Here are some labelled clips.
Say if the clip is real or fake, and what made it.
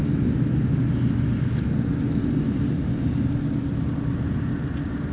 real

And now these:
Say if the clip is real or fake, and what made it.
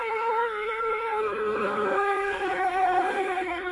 fake, codec, SNAC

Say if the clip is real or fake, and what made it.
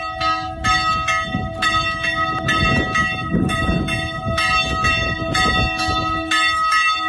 real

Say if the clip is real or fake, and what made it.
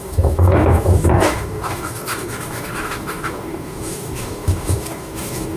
fake, codec, DAC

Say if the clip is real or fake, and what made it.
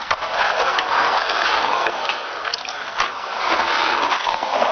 fake, codec, SNAC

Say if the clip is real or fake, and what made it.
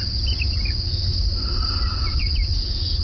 real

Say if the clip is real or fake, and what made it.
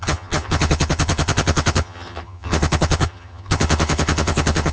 fake, vocoder, HiFi-GAN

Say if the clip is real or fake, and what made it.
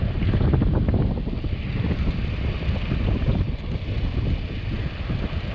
real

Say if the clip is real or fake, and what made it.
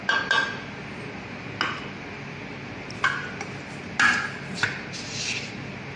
real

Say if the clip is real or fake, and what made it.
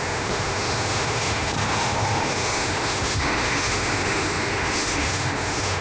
fake, autoencoder, DAC-VAE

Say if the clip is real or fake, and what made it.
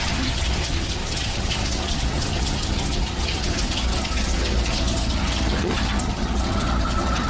fake, vocoder, HiFi-GAN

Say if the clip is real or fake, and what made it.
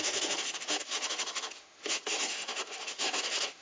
fake, autoencoder, DAC-VAE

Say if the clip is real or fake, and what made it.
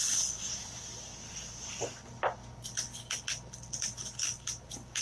real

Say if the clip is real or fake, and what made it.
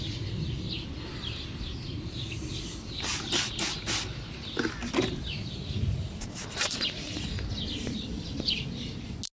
real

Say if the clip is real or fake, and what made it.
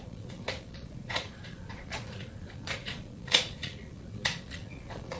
fake, vocoder, Vocos